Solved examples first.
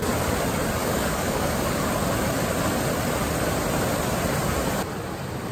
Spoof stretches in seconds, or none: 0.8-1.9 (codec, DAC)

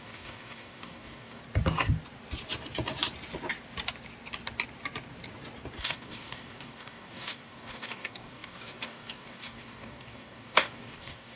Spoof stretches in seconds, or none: 0.0-1.4 (codec, DAC); 5.8-11.4

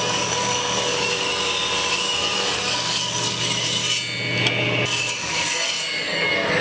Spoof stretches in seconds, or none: 0.0-1.3 (codec, DAC); 1.9-3.8; 5.0-6.6

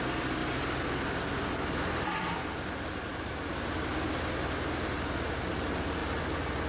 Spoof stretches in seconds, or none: none

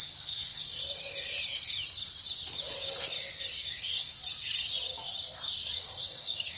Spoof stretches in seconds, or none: 0.0-0.8 (codec, DAC); 3.5-4.2; 5.8-6.6